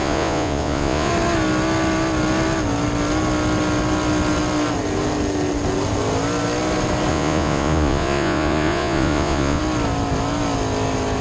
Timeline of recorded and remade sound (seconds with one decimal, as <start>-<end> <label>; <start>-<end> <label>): 0.0-1.1 remade; 1.1-7.1 recorded; 7.1-9.6 remade; 9.6-11.2 recorded